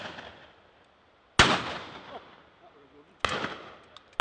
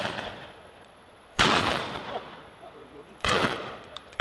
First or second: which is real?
first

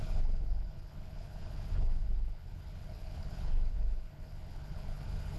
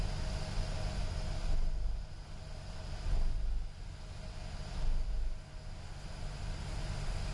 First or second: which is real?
second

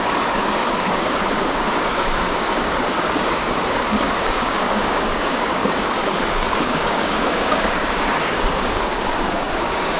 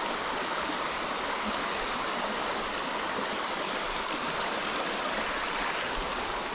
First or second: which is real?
second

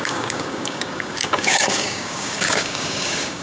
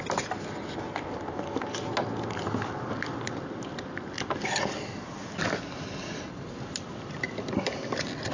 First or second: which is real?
second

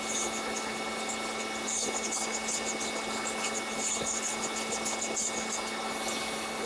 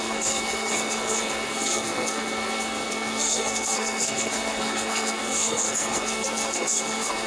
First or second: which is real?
first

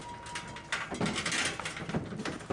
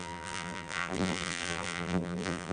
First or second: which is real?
first